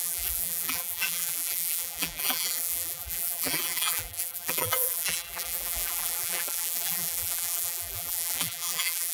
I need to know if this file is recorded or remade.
remade